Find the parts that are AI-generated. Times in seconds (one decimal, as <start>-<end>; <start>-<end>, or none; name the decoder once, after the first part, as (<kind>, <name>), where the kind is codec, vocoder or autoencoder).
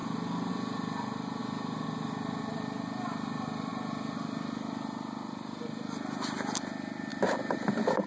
0.0-1.4 (vocoder, BigVGAN v2); 2.4-8.1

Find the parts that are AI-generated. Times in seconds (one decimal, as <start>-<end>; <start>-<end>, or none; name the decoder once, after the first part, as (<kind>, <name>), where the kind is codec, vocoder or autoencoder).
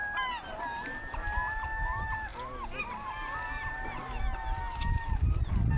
none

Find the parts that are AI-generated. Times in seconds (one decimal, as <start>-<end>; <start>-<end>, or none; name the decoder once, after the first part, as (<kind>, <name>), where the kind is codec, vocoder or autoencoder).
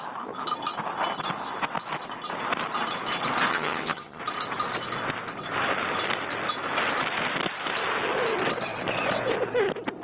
3.5-4.2 (vocoder, HiFi-GAN)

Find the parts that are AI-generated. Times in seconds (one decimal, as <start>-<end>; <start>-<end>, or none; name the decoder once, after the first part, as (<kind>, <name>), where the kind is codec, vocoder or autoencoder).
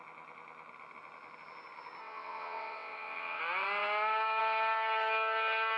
2.0-3.4 (vocoder, WaveNeXt)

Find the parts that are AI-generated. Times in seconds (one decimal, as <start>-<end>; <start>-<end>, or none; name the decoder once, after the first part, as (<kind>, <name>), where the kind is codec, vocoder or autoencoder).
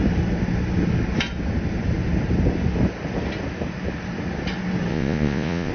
4.9-5.7 (vocoder, Vocos)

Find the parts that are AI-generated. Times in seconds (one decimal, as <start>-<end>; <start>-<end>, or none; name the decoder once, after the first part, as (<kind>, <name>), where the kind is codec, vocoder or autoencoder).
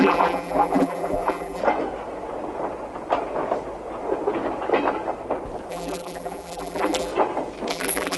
0.0-1.6 (vocoder, BigVGAN v2); 5.7-7.1; 7.7-8.2